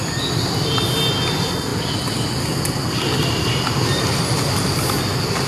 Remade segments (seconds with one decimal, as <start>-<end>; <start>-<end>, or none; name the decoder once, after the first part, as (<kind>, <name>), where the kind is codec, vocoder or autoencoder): none